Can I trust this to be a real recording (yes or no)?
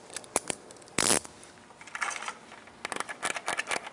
yes